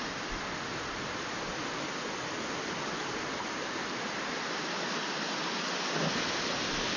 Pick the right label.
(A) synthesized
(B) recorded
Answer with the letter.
B